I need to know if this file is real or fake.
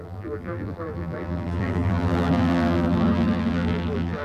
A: fake